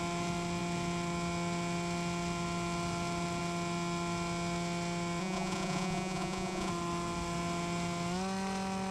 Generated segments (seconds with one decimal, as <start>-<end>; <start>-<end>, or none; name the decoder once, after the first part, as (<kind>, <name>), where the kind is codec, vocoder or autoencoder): 5.2-6.7 (vocoder, Vocos)